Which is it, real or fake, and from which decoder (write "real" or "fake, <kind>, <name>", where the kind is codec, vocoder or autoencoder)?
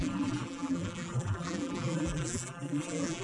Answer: fake, vocoder, BigVGAN v2